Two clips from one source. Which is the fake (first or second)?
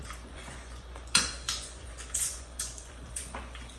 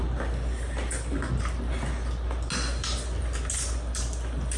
first